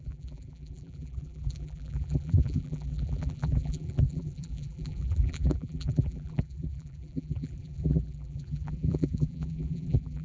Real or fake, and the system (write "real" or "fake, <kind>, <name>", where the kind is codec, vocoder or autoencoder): fake, vocoder, BigVGAN v2